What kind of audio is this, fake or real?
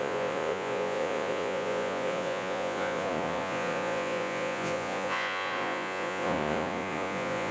fake